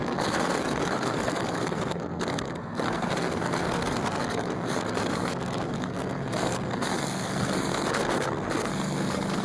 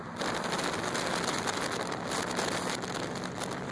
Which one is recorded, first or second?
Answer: second